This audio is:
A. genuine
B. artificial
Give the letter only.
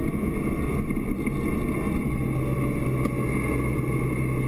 A